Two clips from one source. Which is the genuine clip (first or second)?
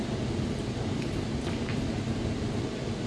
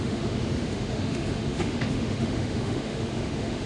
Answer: first